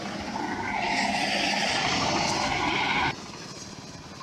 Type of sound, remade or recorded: recorded